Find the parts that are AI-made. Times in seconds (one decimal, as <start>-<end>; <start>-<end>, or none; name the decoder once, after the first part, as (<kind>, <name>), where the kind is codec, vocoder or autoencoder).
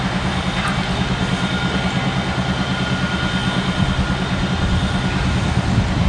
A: none